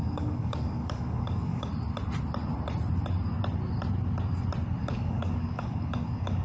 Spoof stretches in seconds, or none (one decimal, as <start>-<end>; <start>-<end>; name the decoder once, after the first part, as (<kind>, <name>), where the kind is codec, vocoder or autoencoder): 0.0-1.7 (codec, DAC); 4.8-6.4